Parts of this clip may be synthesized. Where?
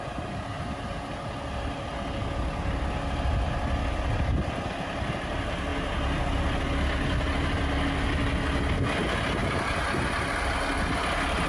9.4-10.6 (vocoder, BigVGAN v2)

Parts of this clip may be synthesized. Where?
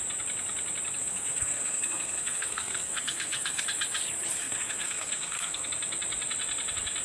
1.0-3.6 (codec, SNAC); 4.4-5.7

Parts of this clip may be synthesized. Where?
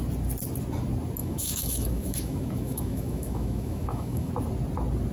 1.2-4.3 (autoencoder, DAC-VAE)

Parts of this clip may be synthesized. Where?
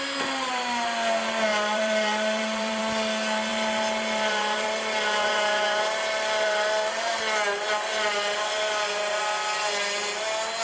1.5-2.8 (vocoder, BigVGAN v2); 3.5-7.2; 7.9-9.3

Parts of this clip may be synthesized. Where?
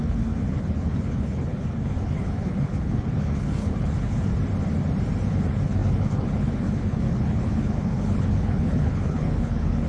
0.0-4.3 (codec, HILCodec); 5.3-9.9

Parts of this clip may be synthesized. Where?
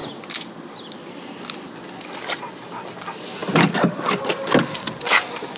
0.0-2.6 (vocoder, BigVGAN v2); 3.4-4.1